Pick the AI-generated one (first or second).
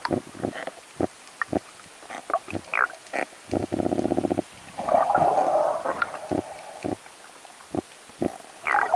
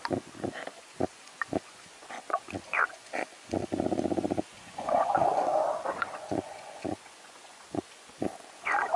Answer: second